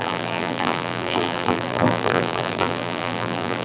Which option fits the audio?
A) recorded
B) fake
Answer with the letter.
B